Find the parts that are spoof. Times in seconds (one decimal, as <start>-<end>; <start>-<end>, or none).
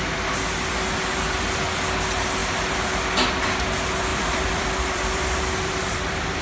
4.1-6.4